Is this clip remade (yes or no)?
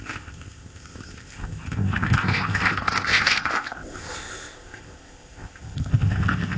yes